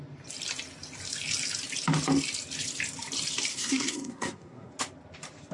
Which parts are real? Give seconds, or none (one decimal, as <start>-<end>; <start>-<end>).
0.0-3.5; 4.7-5.5